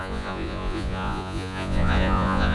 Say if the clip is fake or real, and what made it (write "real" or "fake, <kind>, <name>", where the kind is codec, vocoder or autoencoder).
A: fake, vocoder, Vocos